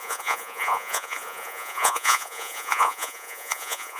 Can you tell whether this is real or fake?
fake